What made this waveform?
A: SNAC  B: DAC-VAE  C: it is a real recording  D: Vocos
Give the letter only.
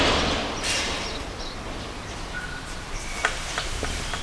C